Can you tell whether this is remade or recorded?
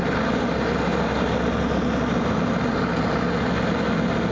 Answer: recorded